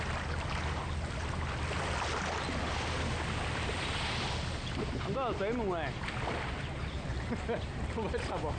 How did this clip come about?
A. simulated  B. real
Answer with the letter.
B